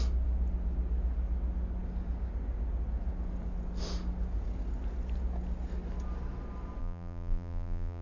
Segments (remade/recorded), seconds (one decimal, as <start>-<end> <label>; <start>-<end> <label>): 0.0-6.8 recorded; 6.8-8.0 remade